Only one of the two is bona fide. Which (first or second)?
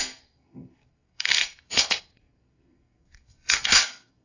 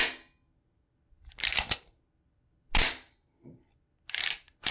second